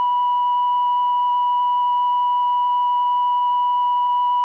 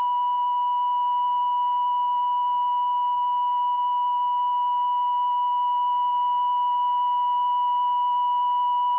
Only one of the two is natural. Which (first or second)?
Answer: first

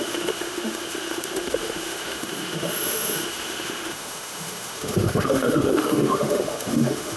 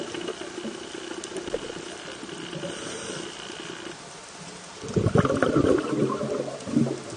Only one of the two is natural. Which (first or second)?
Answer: second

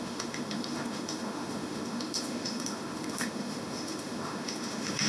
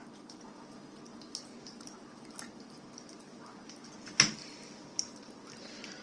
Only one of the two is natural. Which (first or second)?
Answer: second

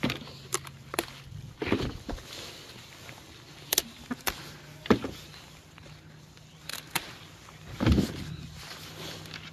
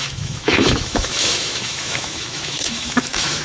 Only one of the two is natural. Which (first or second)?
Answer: first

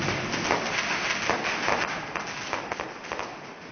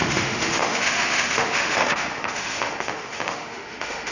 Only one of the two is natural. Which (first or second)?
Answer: first